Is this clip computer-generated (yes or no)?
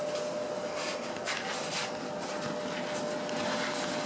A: no